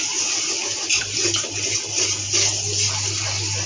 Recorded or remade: recorded